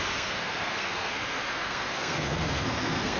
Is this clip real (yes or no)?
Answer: no